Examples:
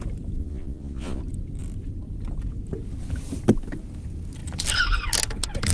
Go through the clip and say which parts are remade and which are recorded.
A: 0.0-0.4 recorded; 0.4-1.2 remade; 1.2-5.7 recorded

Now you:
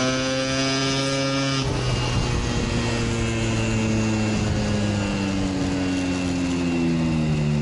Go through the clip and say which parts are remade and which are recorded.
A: 0.0-7.6 recorded

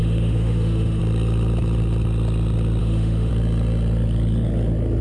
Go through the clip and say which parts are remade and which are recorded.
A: 0.0-1.0 remade; 1.0-2.8 recorded; 2.8-3.3 remade; 3.3-5.0 recorded

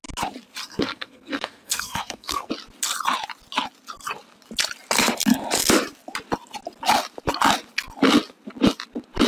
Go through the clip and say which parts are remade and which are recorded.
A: 0.0-0.7 recorded; 0.7-2.5 remade; 2.5-9.3 recorded

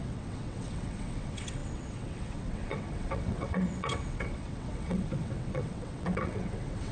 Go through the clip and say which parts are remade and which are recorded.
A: 0.0-6.9 remade

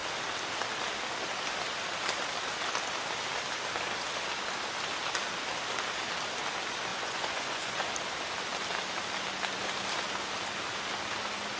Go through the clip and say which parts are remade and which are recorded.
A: 0.0-6.9 recorded; 6.9-7.9 remade; 7.9-11.6 recorded